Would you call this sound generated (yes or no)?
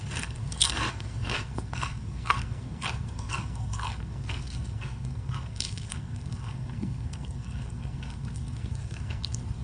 yes